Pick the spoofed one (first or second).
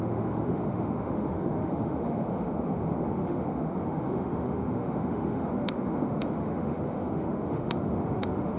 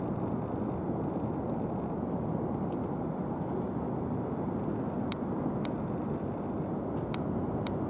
first